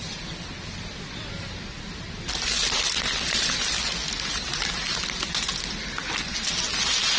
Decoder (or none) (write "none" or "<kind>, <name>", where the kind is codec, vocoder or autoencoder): none